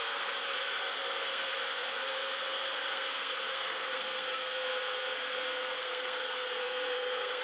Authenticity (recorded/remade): remade